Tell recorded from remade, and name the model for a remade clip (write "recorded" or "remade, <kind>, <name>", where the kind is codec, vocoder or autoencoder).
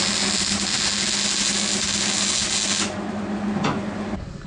recorded